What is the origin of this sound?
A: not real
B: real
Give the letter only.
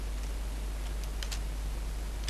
B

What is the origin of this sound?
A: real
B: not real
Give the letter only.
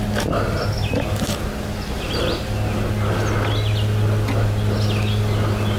A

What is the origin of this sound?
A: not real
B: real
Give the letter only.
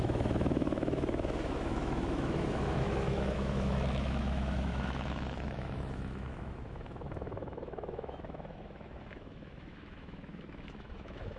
A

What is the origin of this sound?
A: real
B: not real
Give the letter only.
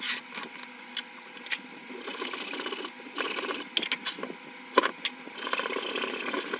A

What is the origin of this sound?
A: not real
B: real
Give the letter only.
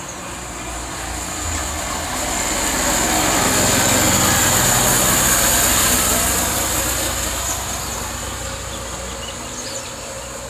B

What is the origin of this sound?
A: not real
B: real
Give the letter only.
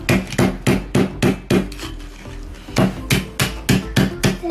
B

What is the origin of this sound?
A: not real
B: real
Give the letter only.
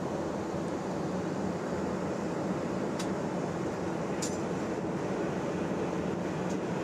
B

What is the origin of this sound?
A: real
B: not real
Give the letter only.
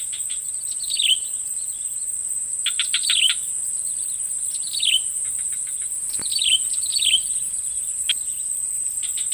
A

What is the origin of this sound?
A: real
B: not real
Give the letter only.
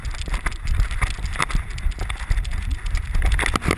A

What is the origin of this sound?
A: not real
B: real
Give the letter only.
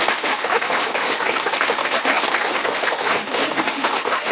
A